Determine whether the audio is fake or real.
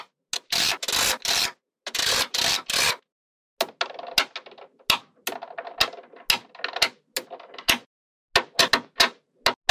real